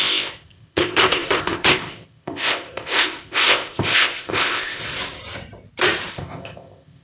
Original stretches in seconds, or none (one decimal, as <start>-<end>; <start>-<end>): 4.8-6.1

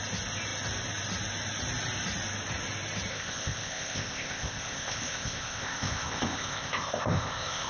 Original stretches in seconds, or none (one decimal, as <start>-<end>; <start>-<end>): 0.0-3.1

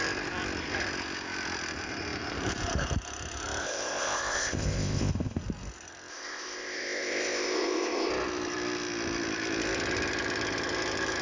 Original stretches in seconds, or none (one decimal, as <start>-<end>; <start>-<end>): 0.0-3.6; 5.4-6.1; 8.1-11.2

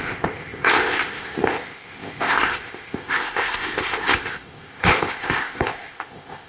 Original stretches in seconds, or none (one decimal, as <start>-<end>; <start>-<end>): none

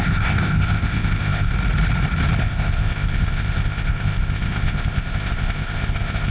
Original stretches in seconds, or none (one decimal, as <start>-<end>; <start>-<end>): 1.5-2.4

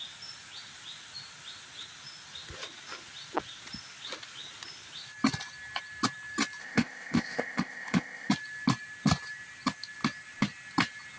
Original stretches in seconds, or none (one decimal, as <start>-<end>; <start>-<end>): 0.0-6.6; 8.3-11.2

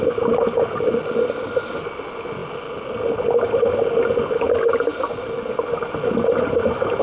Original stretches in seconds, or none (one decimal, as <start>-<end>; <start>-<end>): 0.0-7.0